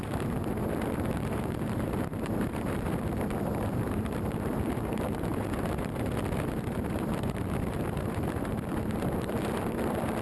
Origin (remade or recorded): remade